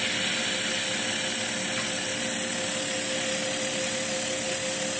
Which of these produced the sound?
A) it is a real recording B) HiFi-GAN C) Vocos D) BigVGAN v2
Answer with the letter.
A